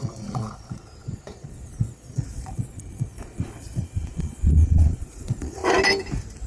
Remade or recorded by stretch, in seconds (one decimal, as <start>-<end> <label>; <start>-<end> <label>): 0.0-5.6 remade; 5.6-6.5 recorded